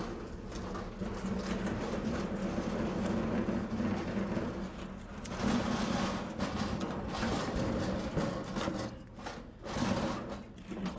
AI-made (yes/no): no